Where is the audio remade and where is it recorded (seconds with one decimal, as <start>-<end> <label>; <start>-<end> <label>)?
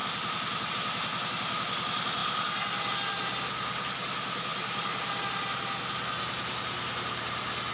0.0-7.7 recorded